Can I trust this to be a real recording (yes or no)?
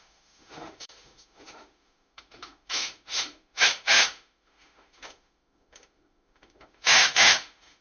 no